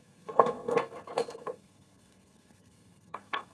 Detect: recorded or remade remade